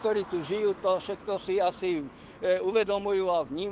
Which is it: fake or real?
fake